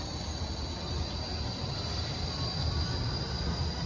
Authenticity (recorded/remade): recorded